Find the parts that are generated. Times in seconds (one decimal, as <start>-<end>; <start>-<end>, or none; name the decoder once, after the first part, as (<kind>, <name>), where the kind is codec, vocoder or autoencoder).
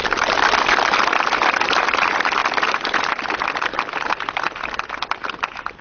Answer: none